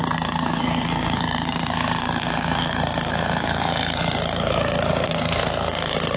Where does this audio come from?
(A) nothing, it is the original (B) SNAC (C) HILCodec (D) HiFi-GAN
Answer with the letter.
B